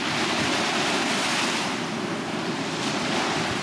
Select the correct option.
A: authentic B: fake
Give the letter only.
B